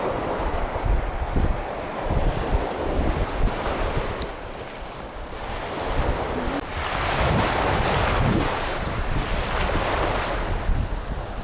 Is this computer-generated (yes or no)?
no